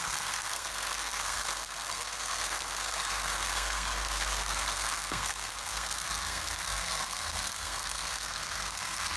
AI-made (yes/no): yes